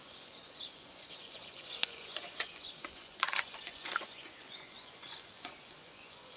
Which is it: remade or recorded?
remade